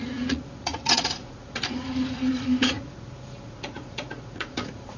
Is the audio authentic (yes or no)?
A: no